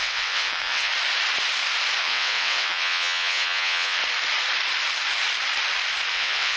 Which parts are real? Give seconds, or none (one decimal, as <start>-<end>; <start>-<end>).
0.9-2.0; 4.0-6.1